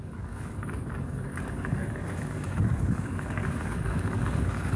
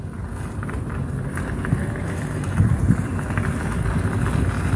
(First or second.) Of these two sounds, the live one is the second